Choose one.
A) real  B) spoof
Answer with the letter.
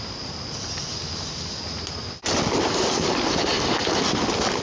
A